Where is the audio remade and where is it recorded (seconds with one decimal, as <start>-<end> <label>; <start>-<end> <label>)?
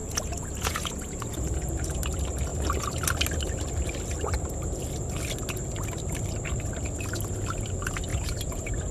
0.0-2.0 remade; 2.0-8.1 recorded; 8.1-8.9 remade